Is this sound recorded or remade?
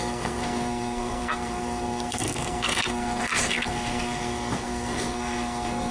remade